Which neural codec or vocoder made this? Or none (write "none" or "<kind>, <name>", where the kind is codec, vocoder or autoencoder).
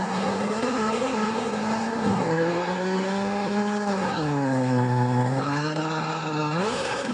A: codec, SNAC